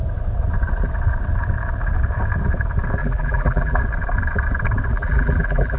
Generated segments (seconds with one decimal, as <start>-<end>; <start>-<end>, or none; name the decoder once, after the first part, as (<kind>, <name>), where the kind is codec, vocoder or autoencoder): 3.0-3.8 (vocoder, BigVGAN v2); 4.9-5.8